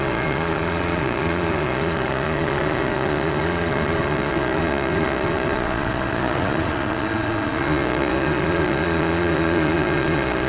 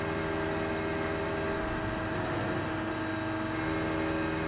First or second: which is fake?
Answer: first